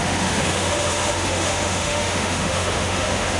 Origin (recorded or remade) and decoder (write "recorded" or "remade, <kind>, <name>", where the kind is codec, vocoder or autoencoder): remade, autoencoder, DAC-VAE